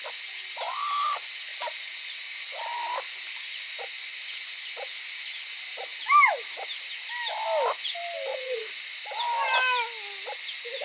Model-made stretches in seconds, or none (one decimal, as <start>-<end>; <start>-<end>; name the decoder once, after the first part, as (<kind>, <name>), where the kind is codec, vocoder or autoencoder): 1.5-2.6 (vocoder, Vocos); 8.3-8.8